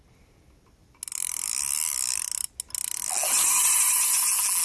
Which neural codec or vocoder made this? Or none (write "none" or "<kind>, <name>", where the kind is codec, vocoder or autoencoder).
none